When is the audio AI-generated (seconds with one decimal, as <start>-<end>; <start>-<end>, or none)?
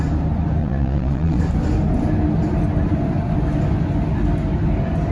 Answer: 0.6-1.4